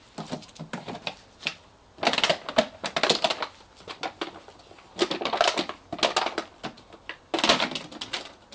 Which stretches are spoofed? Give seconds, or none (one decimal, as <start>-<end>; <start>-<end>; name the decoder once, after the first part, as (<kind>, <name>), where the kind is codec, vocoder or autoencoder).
none